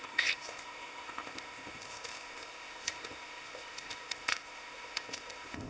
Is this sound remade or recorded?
remade